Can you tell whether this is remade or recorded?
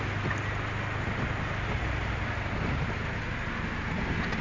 recorded